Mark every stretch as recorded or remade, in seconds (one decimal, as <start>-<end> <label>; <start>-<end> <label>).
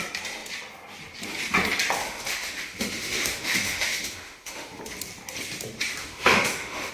0.0-2.0 recorded; 2.0-4.8 remade; 4.8-6.0 recorded; 6.0-6.9 remade